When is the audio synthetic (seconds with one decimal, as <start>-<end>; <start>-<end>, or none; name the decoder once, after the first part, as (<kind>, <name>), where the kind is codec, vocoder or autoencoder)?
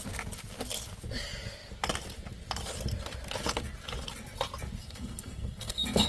4.8-6.1 (codec, SNAC)